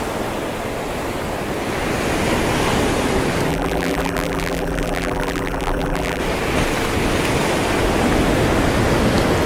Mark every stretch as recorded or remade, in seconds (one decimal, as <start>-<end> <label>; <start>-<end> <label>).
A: 0.0-3.5 recorded; 3.5-6.2 remade; 6.2-9.5 recorded